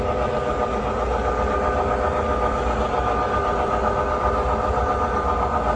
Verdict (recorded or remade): recorded